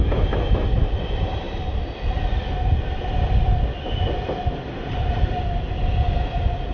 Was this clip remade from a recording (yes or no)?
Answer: no